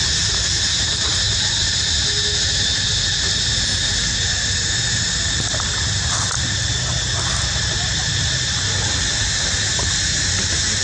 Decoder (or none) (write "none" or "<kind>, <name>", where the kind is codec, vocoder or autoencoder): none